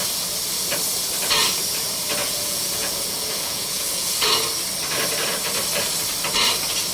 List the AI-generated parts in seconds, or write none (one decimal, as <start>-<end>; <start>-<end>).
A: 2.2-4.3